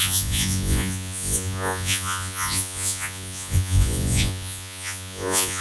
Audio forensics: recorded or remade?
remade